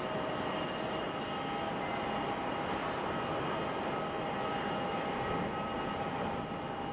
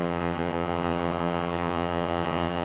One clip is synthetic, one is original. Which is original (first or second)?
first